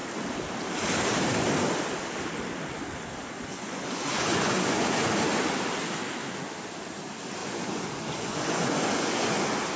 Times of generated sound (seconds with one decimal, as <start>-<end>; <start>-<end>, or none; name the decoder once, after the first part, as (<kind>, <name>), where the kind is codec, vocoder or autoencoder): 3.5-5.1 (vocoder, Vocos); 7.4-9.4